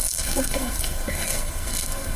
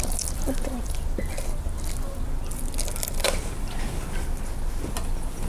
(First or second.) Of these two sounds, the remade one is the first